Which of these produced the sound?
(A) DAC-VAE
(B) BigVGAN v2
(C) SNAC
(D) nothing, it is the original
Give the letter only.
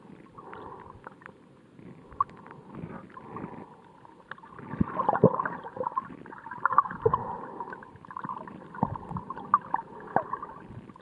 D